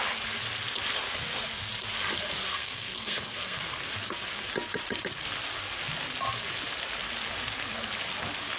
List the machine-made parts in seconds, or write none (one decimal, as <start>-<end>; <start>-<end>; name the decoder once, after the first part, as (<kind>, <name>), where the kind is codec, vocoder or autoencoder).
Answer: 2.5-3.6 (codec, SNAC)